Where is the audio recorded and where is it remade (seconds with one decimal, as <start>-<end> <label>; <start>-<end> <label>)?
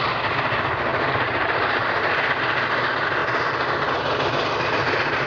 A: 0.0-0.9 recorded; 0.9-2.4 remade; 2.4-5.3 recorded